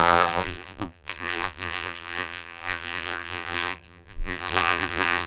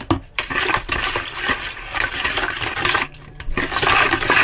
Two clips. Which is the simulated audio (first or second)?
first